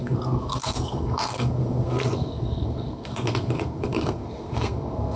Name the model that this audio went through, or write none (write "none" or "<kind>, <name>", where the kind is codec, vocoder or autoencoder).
codec, SNAC